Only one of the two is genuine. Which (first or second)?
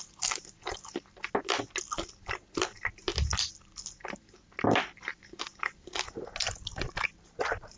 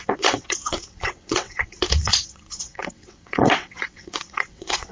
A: first